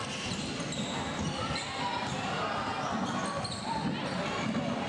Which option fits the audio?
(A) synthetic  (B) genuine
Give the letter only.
B